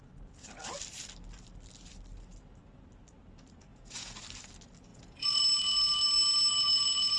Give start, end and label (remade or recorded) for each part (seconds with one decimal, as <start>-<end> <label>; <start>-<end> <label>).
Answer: 0.0-3.7 recorded; 3.7-4.2 remade; 4.2-4.9 recorded; 4.9-5.4 remade; 5.4-7.2 recorded